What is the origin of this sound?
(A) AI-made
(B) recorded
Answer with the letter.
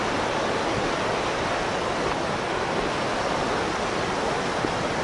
B